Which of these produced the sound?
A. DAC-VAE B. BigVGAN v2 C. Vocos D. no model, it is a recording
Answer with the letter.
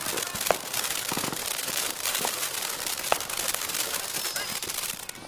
D